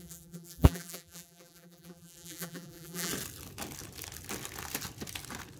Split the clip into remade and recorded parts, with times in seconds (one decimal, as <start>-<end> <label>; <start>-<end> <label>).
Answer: 0.0-3.1 remade; 3.1-5.6 recorded